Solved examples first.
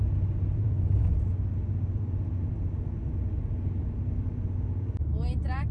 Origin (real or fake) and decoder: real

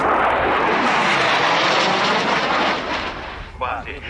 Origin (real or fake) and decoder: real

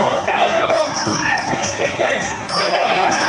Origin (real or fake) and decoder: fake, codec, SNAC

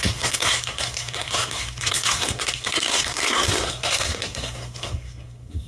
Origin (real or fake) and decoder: fake, codec, SNAC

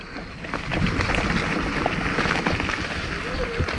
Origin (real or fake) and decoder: real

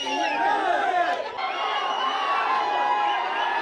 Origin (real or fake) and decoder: real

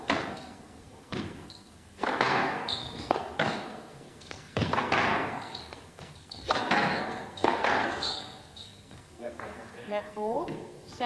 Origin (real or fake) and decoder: fake, codec, SNAC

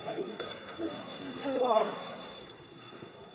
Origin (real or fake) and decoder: fake, codec, SNAC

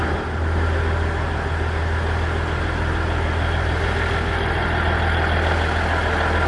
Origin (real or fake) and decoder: real